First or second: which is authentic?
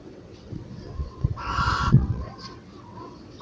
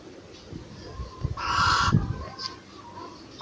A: second